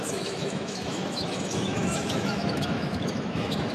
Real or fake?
fake